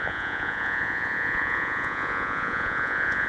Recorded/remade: remade